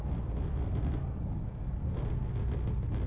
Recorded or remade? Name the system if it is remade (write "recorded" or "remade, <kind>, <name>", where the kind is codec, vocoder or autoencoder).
recorded